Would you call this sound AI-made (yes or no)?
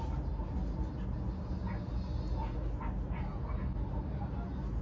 no